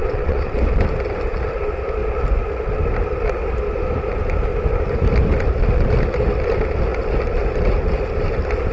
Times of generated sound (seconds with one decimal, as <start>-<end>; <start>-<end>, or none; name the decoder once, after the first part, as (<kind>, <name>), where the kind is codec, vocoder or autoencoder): 0.0-0.6 (vocoder, WaveNeXt)